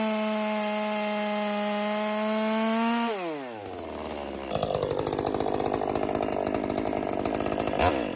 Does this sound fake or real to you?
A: real